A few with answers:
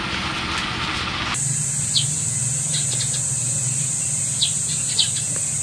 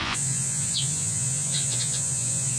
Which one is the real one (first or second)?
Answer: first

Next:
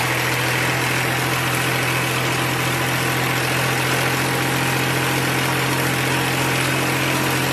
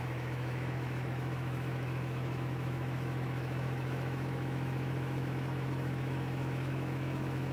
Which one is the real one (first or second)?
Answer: first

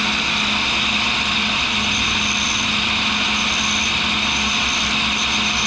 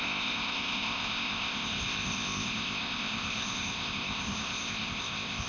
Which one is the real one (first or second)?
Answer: first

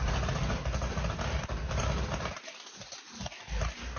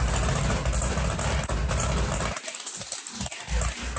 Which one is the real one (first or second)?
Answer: second